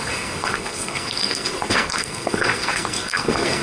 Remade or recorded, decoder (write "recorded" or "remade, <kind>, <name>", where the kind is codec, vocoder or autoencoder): remade, codec, SNAC